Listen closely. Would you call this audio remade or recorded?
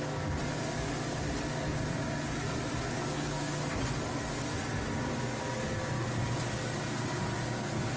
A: recorded